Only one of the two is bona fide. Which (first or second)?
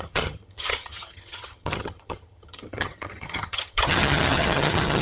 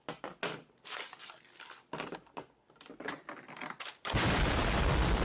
second